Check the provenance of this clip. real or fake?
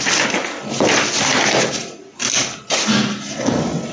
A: real